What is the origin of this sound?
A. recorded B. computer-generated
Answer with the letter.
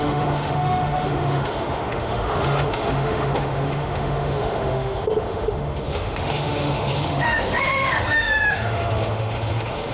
B